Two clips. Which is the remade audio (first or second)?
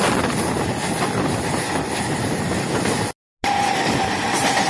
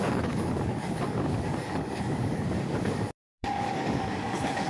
second